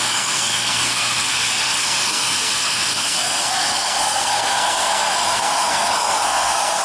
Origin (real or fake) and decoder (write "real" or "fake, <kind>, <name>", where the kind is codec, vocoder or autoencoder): fake, codec, SNAC